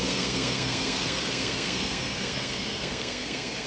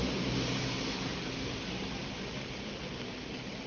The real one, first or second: second